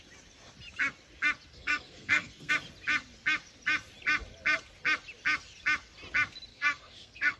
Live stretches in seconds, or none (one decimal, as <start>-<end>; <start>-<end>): 0.0-1.5; 2.5-6.5